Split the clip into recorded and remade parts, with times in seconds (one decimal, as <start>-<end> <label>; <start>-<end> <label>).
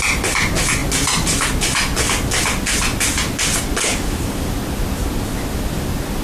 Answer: 0.0-6.2 recorded